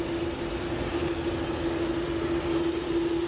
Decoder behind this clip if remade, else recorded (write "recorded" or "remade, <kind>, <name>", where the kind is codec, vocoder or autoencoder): recorded